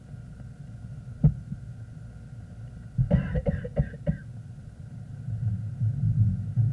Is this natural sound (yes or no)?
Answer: yes